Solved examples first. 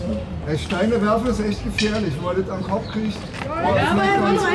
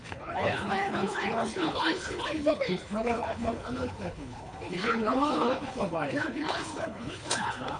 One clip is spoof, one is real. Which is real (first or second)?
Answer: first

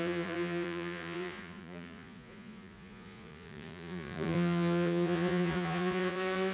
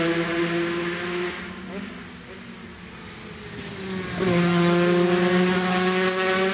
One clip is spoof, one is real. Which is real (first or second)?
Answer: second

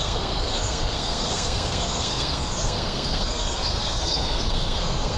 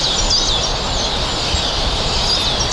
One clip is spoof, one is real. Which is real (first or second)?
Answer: second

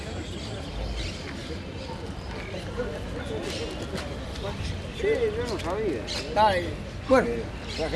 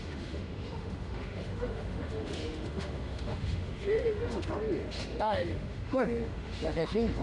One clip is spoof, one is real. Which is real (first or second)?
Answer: first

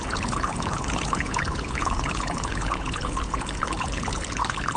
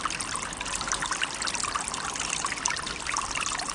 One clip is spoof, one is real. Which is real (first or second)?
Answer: second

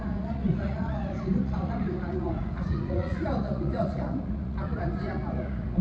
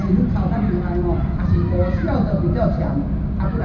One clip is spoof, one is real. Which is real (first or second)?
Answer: second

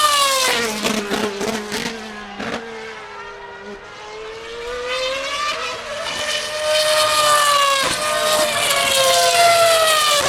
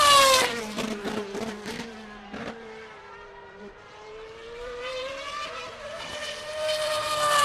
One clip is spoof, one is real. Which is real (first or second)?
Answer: first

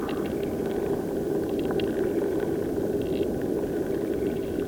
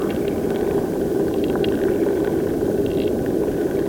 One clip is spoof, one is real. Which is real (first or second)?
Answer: first